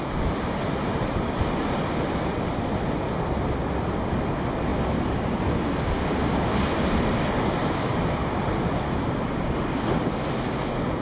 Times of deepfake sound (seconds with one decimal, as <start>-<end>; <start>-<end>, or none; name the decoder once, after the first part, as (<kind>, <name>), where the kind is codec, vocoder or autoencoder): none